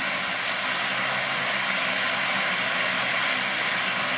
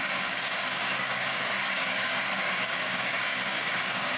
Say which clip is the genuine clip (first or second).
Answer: first